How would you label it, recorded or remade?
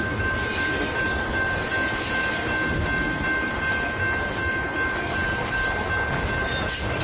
recorded